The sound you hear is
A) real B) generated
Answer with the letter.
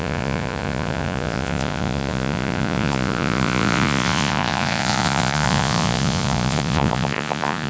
B